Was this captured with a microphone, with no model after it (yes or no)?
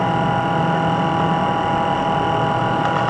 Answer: yes